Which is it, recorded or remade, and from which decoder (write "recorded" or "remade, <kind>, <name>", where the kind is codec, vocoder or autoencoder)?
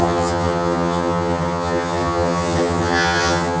remade, vocoder, HiFi-GAN